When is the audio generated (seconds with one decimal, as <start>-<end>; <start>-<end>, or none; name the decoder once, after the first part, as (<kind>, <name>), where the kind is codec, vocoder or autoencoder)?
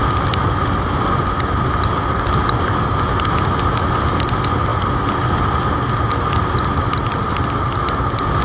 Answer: none